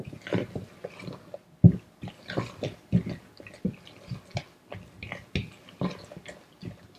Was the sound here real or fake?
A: real